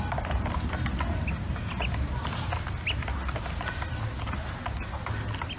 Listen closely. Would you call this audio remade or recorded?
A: recorded